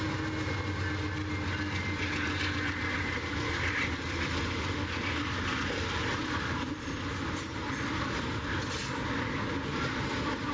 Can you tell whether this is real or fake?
real